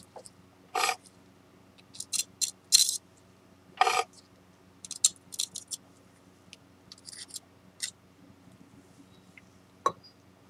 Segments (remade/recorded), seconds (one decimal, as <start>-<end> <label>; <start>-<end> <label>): 0.0-2.8 recorded; 2.8-4.2 remade; 4.2-10.5 recorded